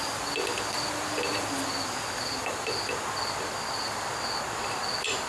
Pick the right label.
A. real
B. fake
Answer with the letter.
A